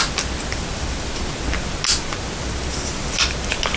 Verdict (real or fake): real